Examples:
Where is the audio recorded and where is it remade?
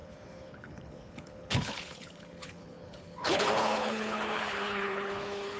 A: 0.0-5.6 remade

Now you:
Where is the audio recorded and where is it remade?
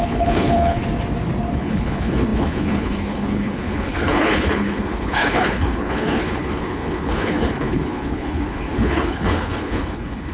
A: 0.0-0.8 remade; 0.8-1.5 recorded; 1.5-10.3 remade